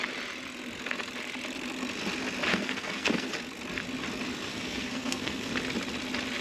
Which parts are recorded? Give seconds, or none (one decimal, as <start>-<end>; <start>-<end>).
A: 0.0-2.5; 3.3-4.5; 5.5-6.4